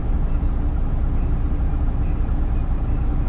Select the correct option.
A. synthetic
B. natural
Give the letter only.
B